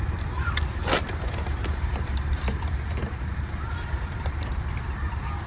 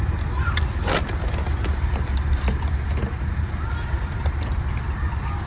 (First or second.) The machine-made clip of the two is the first